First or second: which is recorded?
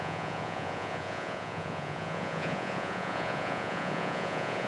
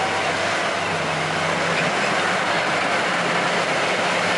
second